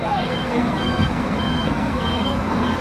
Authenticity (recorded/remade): remade